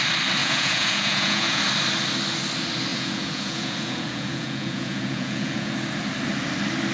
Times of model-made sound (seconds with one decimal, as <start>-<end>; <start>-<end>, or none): 0.4-1.6; 2.9-5.7